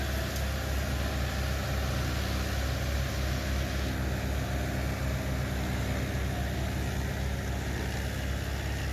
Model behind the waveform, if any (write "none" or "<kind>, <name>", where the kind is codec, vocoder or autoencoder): none